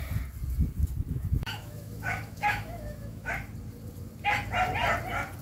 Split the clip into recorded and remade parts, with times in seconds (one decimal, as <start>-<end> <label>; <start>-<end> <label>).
0.0-1.1 recorded; 1.1-3.3 remade; 3.3-5.4 recorded